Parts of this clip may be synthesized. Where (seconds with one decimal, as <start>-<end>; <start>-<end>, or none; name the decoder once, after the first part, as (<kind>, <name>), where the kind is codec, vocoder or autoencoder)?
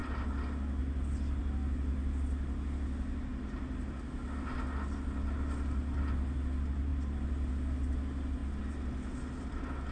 none